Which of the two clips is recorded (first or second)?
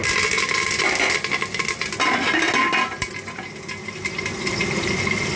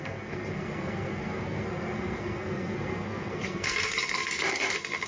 first